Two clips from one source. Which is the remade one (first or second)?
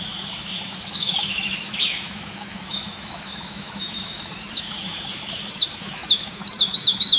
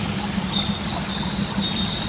first